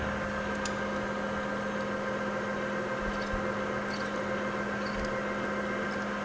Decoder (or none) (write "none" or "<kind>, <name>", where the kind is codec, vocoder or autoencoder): none